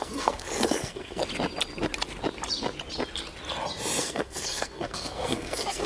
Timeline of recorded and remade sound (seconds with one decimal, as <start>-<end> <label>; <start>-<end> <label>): 0.0-1.2 remade; 1.2-4.0 recorded; 4.0-5.9 remade